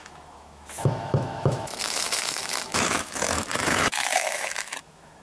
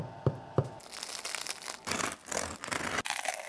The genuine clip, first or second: second